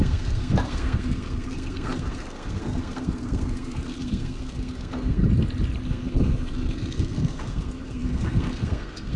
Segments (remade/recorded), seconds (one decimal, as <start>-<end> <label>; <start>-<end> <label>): 0.0-5.2 remade; 5.2-5.9 recorded; 5.9-9.2 remade

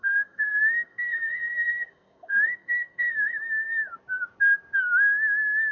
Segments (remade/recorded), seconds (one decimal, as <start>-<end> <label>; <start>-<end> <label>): 0.0-3.4 remade; 3.4-5.7 recorded

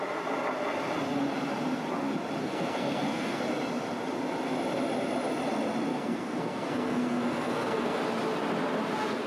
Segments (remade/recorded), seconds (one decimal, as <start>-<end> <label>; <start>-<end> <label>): 0.0-2.4 recorded; 2.4-3.4 remade; 3.4-5.9 recorded; 5.9-8.0 remade; 8.0-9.3 recorded

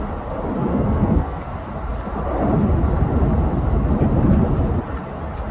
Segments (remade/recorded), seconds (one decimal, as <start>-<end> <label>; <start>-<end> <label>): 0.0-0.7 recorded; 0.7-1.5 remade; 1.5-5.5 recorded

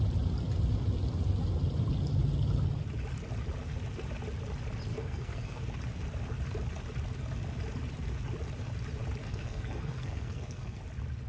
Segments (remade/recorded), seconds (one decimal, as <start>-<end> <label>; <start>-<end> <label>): 0.0-4.9 recorded; 4.9-5.6 remade; 5.6-9.2 recorded; 9.2-10.8 remade; 10.8-11.3 recorded